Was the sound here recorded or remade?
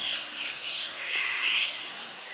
remade